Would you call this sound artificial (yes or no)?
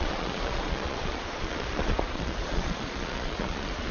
yes